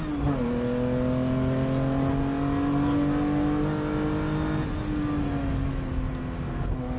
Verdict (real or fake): real